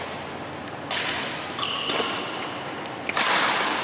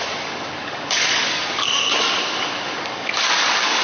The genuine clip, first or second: first